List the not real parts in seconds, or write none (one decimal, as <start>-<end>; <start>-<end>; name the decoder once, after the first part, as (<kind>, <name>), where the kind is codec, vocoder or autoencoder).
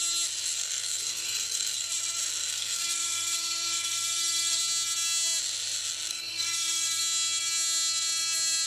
0.5-1.9 (codec, SNAC); 2.4-4.6; 6.1-7.0